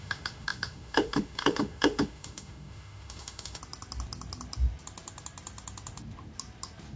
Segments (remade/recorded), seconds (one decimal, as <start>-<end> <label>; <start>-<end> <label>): 0.0-3.6 remade; 3.6-7.0 recorded